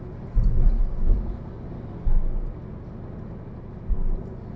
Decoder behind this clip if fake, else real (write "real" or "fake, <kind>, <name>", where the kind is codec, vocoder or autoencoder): real